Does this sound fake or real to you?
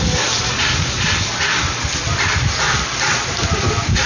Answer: real